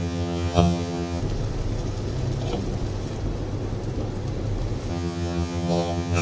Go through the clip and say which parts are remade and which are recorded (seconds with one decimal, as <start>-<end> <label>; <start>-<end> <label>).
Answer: 0.0-1.2 remade; 1.2-4.9 recorded; 4.9-6.2 remade